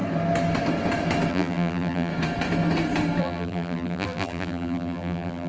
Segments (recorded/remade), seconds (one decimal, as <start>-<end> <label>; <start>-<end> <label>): 0.0-1.3 recorded; 1.3-2.1 remade; 2.1-3.2 recorded; 3.2-5.5 remade